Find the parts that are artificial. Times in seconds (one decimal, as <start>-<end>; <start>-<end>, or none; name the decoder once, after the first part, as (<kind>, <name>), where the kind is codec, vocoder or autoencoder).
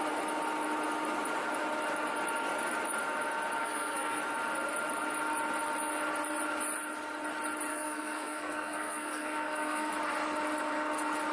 3.6-4.2 (codec, SNAC); 7.7-9.9